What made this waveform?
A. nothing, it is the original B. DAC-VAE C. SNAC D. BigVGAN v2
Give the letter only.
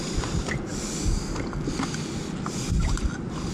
A